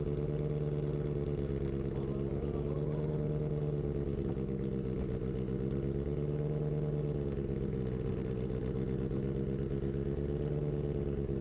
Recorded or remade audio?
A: recorded